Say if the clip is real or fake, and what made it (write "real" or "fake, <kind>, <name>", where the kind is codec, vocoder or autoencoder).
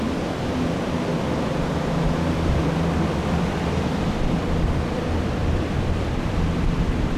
fake, vocoder, BigVGAN v2